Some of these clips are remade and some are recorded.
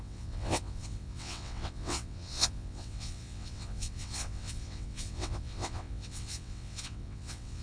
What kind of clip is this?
remade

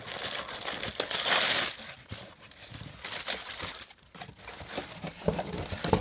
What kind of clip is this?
recorded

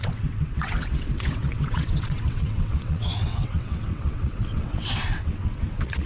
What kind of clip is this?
remade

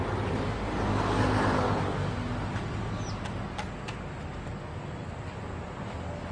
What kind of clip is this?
recorded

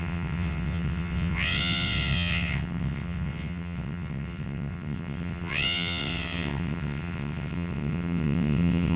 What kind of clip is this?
remade